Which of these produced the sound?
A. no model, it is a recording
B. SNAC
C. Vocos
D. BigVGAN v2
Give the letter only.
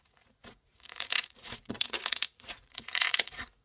C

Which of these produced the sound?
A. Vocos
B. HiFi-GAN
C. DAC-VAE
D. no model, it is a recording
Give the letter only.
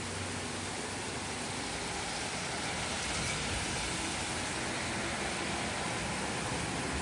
D